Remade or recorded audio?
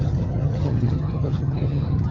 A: remade